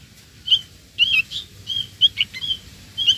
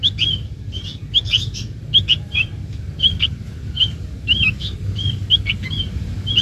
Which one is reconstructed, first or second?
second